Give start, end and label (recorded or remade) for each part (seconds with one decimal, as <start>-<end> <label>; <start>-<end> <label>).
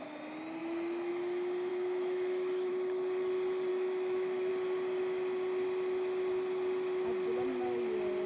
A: 0.0-0.6 recorded; 0.6-1.1 remade; 1.1-1.7 recorded; 1.7-2.7 remade; 2.7-3.7 recorded; 3.7-4.5 remade; 4.5-8.3 recorded